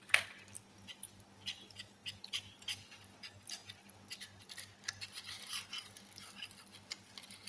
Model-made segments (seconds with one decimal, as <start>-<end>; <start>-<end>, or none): none